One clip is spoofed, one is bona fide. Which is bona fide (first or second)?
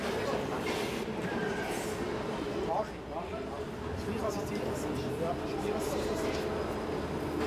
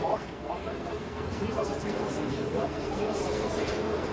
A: first